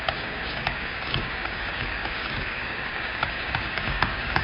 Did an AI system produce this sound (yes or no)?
yes